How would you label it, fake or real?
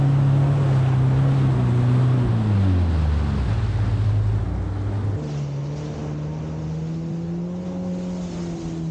real